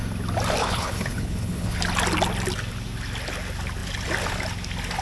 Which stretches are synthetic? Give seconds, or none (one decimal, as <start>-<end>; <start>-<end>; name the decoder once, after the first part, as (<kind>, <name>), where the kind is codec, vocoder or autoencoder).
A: 0.6-1.8 (codec, HILCodec)